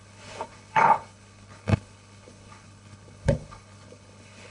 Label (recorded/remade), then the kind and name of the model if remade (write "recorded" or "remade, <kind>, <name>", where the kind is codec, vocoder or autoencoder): remade, codec, HILCodec